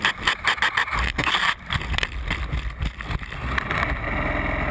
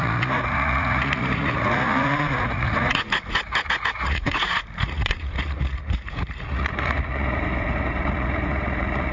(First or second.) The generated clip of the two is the second